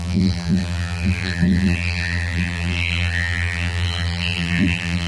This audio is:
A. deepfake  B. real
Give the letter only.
A